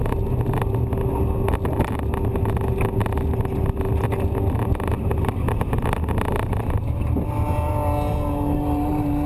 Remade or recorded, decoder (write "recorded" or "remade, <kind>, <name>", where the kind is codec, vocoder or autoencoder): recorded